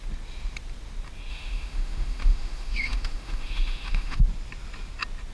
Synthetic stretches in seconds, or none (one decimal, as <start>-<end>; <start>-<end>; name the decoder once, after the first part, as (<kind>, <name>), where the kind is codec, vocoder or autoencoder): 1.3-4.2 (autoencoder, DAC-VAE)